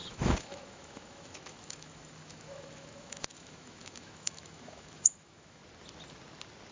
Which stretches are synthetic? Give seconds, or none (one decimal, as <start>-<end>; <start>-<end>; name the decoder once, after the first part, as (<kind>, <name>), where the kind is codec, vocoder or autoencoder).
0.0-5.6 (autoencoder, DAC-VAE)

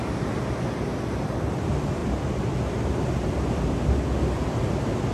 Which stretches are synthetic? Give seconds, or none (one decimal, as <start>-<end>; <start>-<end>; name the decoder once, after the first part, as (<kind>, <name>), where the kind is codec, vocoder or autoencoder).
none